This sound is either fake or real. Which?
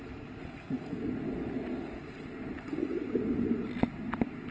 real